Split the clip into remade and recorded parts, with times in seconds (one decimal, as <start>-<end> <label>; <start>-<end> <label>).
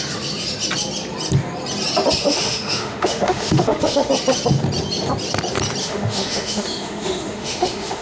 0.0-2.2 recorded; 2.2-4.1 remade; 4.1-5.8 recorded; 5.8-8.0 remade